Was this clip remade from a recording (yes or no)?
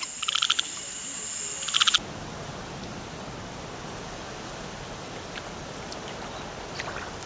no